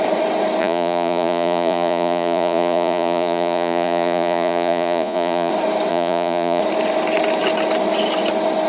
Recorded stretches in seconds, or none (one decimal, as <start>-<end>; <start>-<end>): 0.0-0.6; 5.5-5.9; 6.6-8.7